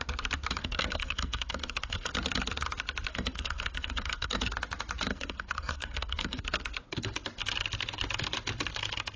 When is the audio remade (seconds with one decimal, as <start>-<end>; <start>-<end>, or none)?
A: 0.6-2.1; 3.1-4.4; 5.1-6.4